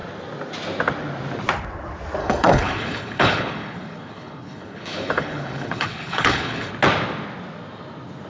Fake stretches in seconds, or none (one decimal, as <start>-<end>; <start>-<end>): 2.2-6.7